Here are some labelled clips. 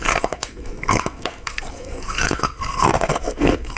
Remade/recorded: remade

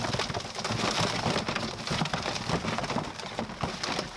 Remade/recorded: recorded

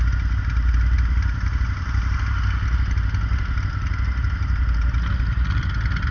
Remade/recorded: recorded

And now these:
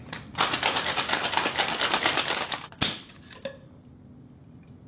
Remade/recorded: recorded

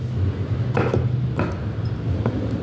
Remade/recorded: recorded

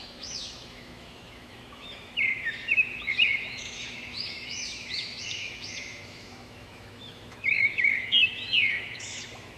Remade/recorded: remade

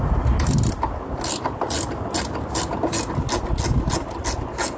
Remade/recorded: recorded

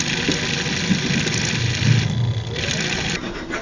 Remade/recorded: recorded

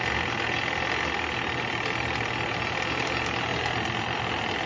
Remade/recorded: recorded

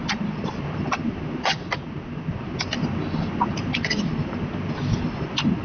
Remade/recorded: recorded